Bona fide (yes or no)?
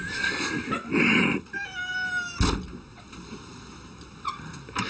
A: yes